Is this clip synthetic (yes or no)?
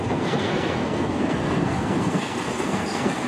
yes